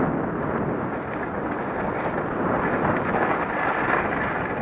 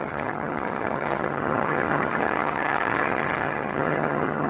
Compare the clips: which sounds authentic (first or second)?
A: first